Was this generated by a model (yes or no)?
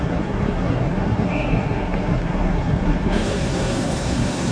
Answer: yes